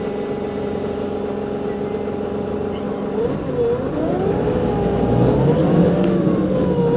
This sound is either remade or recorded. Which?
recorded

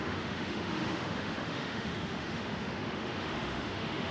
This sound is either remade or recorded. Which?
remade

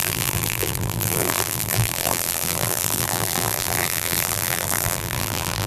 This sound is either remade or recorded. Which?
remade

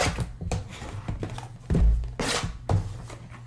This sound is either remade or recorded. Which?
recorded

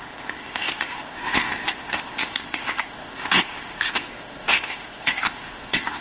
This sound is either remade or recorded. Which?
remade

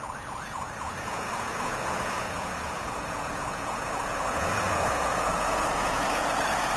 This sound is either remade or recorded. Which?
remade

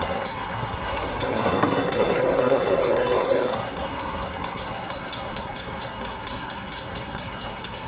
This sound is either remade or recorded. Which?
remade